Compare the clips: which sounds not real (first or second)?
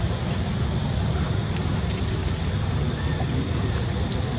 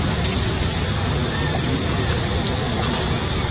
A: first